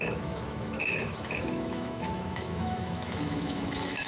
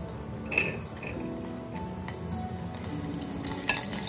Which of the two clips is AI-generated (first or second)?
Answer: first